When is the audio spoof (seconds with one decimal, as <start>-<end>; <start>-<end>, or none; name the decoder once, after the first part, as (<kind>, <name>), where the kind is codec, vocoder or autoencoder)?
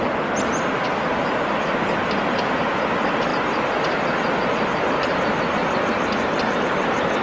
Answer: none